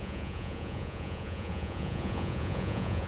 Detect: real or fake fake